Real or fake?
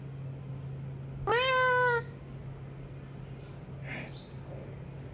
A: real